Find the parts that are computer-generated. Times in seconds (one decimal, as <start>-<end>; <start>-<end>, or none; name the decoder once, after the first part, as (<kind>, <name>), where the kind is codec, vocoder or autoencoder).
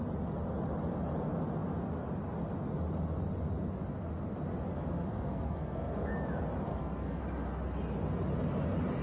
4.7-6.1 (codec, SNAC); 6.7-7.2